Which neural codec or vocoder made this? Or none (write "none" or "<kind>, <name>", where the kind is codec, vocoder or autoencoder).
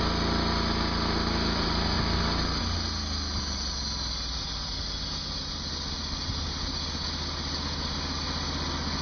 none